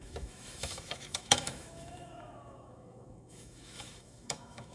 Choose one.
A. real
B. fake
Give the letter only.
B